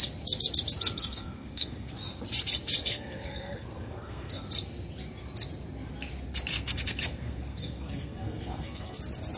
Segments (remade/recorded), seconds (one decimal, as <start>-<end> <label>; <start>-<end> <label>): 0.0-1.0 recorded; 1.0-1.9 remade; 1.9-2.8 recorded; 2.8-4.4 remade; 4.4-6.5 recorded; 6.5-9.0 remade; 9.0-9.4 recorded